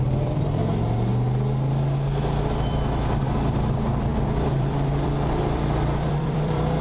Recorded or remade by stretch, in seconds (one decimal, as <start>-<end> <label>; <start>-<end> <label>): 0.0-0.6 remade; 0.6-2.4 recorded; 2.4-6.8 remade